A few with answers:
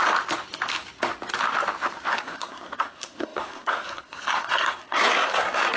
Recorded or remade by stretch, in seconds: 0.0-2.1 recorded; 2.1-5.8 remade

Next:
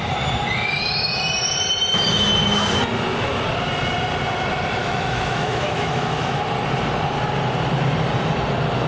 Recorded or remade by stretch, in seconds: 0.0-4.8 recorded; 4.8-6.4 remade; 6.4-8.9 recorded

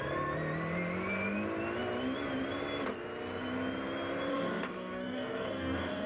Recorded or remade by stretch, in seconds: 0.0-4.3 recorded; 4.3-6.1 remade

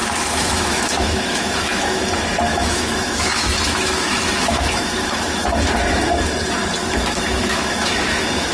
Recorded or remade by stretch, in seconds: 0.0-2.0 remade; 2.0-2.5 recorded; 2.5-5.6 remade; 5.6-6.8 recorded; 6.8-8.5 remade

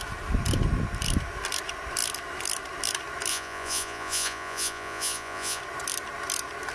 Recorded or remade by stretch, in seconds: 0.0-3.3 recorded; 3.3-5.6 remade; 5.6-6.7 recorded